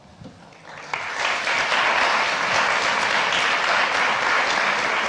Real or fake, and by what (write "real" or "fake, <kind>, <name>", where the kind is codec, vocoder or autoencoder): real